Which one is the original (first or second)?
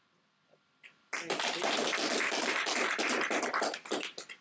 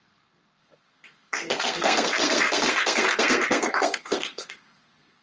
first